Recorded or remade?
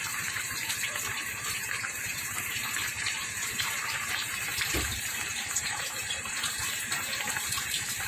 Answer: remade